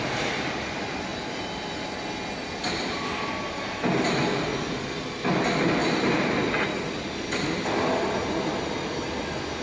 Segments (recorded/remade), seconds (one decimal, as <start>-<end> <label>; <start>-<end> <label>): 0.0-1.1 recorded; 1.1-1.9 remade; 1.9-5.8 recorded; 5.8-6.4 remade; 6.4-9.6 recorded